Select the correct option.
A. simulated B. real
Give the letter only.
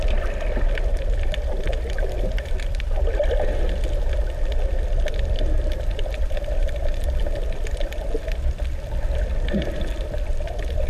B